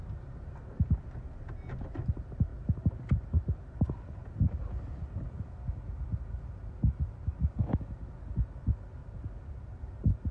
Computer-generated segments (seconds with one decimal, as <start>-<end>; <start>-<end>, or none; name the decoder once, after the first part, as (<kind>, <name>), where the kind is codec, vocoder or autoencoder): 9.0-9.8 (vocoder, BigVGAN v2)